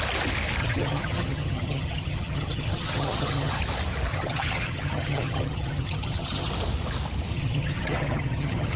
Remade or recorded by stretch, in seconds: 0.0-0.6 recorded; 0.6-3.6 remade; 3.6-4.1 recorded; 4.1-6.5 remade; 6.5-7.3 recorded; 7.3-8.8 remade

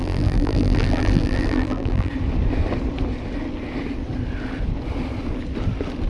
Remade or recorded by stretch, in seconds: 0.0-2.1 remade; 2.1-6.1 recorded